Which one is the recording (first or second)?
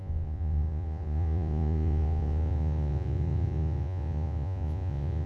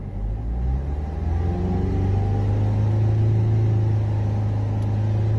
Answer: second